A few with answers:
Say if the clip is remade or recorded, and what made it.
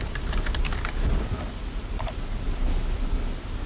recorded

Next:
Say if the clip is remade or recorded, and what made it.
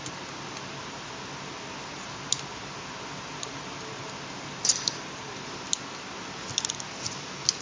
recorded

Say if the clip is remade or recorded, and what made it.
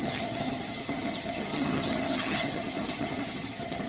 remade, vocoder, HiFi-GAN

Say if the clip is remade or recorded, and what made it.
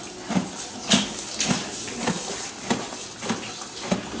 recorded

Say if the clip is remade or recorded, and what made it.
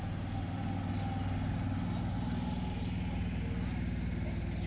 recorded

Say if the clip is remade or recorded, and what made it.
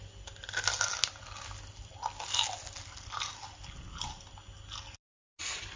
recorded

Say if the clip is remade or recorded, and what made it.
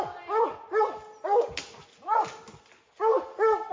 recorded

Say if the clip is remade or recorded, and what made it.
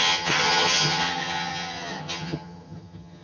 remade, vocoder, HiFi-GAN